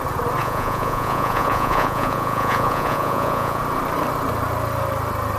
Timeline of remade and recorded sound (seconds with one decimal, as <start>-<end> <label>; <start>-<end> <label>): 0.0-0.4 recorded; 0.4-3.6 remade; 3.6-5.4 recorded